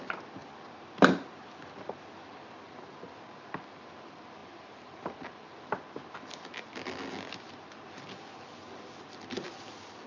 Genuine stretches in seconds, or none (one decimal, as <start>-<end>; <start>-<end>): 0.0-4.4; 5.4-10.1